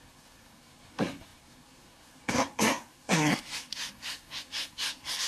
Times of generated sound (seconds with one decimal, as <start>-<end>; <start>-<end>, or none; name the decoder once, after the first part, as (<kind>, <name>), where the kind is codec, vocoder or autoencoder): 0.0-5.3 (codec, SNAC)